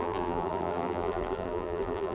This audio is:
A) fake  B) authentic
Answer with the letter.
A